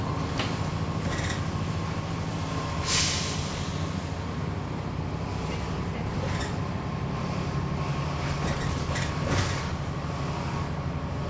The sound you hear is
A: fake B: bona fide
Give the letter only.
B